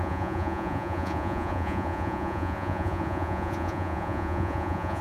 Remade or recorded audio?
remade